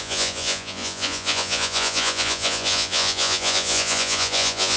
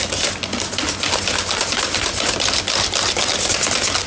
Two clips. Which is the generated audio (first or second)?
first